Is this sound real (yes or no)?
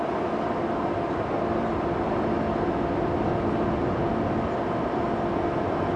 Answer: yes